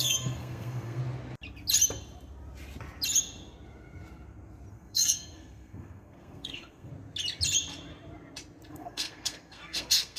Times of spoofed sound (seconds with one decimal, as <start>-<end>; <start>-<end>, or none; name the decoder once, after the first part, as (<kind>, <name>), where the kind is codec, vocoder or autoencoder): 0.0-1.0 (codec, SNAC); 4.7-6.9; 8.7-10.2